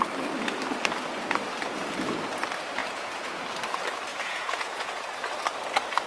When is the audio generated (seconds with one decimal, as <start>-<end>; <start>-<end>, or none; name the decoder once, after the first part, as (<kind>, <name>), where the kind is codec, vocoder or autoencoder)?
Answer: 2.8-3.4 (vocoder, Vocos); 4.1-5.1